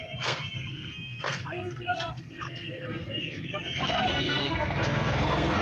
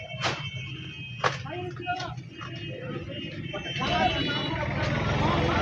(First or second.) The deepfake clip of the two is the first